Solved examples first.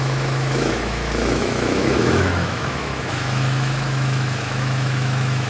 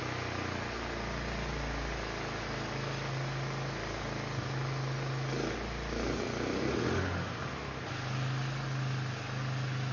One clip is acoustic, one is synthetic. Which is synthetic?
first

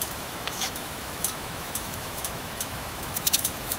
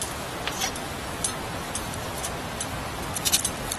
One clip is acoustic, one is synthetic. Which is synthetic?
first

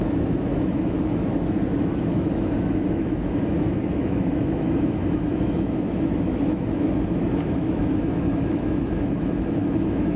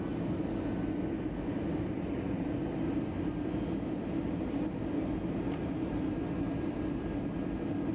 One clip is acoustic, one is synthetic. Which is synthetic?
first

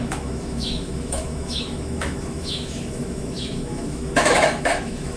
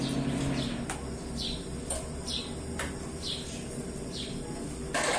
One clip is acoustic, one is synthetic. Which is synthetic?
first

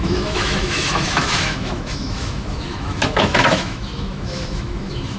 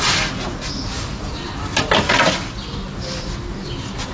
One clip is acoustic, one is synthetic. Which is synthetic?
first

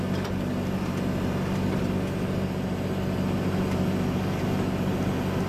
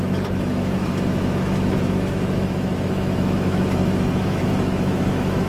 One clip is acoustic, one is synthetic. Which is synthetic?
second